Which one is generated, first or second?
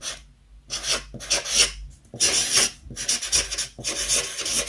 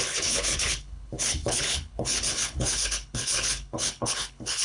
second